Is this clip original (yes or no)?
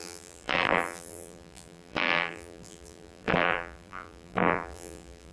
no